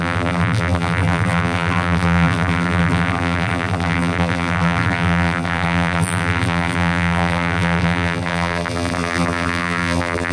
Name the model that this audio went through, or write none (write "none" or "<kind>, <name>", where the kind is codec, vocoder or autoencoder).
vocoder, BigVGAN v2